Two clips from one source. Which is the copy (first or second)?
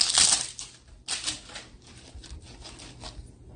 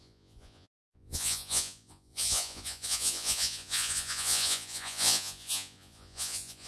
second